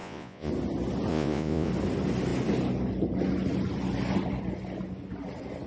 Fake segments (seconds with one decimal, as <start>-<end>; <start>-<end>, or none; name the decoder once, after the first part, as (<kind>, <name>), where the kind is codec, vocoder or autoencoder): 0.0-0.5 (vocoder, Vocos); 1.1-1.7